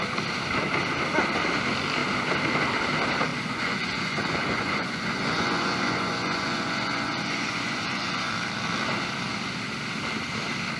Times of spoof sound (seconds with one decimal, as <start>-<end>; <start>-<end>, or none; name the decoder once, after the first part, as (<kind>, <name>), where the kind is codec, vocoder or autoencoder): 3.3-8.3 (vocoder, Vocos)